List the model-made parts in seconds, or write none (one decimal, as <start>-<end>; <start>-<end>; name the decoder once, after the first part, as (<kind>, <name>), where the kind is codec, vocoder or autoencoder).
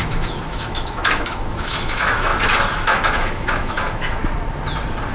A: 0.0-2.3 (autoencoder, DAC-VAE); 2.9-4.2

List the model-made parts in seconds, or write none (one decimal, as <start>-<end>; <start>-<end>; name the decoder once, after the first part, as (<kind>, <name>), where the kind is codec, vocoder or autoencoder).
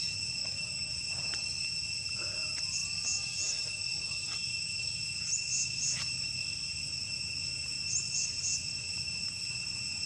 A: 0.4-0.9 (autoencoder, DAC-VAE)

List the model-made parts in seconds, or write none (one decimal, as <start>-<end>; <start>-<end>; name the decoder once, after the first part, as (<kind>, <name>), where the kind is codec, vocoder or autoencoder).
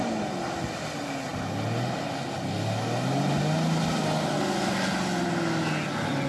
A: none